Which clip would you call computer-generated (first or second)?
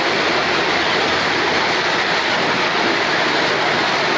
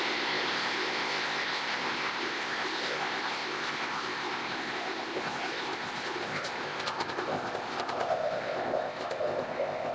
second